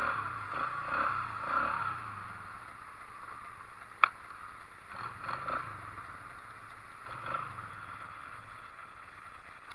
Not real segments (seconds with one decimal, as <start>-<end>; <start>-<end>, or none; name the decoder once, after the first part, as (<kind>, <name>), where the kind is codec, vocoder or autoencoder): 7.7-9.7 (codec, HILCodec)